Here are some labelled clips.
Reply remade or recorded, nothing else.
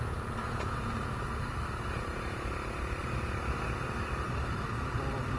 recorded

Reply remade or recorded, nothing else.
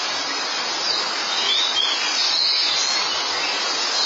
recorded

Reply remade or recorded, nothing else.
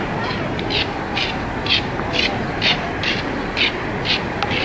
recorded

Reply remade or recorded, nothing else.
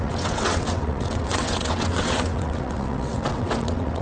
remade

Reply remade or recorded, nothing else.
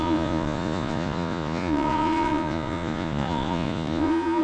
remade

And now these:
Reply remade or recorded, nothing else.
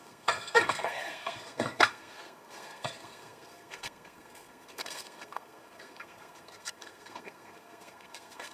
remade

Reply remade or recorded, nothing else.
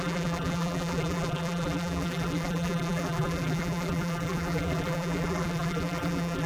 remade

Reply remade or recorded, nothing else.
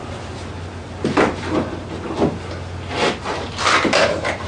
recorded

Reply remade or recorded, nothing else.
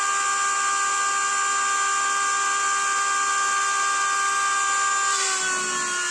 recorded